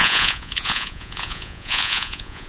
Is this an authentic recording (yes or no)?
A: no